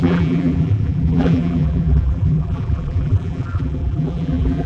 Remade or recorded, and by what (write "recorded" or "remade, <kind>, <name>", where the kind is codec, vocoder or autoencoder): remade, vocoder, BigVGAN v2